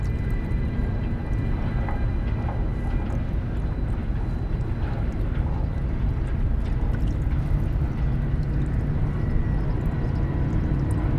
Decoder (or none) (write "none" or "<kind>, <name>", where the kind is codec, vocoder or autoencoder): none